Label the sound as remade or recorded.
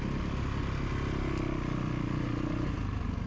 recorded